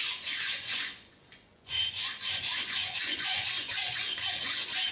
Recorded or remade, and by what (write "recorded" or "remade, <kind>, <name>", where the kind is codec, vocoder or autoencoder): remade, vocoder, Vocos